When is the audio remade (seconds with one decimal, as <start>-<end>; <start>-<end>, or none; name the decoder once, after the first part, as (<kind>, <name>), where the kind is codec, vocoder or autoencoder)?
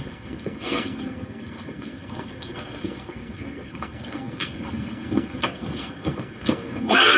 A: 0.0-7.2 (codec, SNAC)